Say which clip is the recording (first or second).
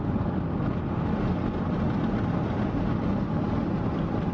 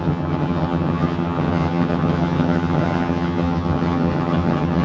first